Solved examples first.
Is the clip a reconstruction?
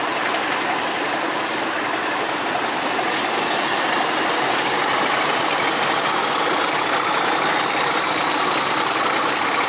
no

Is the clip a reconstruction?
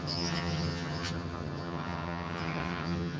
yes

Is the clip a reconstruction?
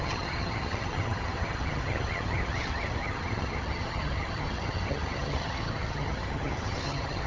yes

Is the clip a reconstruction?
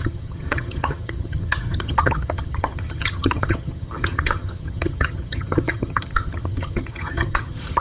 yes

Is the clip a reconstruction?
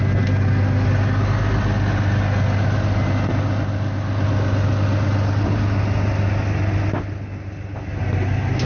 no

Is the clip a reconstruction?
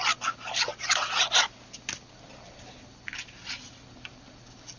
no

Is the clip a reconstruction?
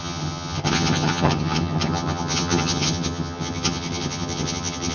yes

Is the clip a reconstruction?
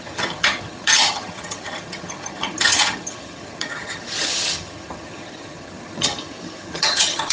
yes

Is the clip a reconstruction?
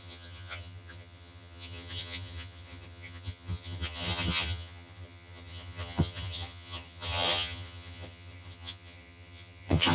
yes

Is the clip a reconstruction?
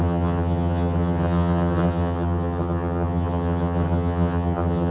yes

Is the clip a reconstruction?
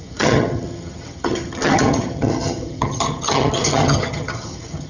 yes